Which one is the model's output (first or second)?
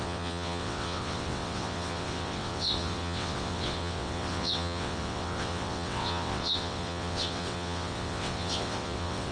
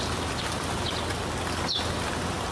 first